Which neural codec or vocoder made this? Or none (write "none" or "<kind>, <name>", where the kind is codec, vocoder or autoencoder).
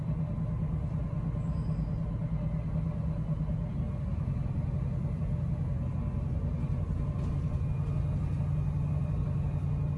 none